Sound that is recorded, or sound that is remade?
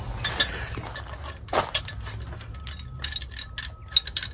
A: recorded